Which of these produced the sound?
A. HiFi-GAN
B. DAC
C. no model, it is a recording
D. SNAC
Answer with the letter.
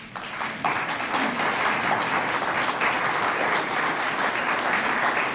C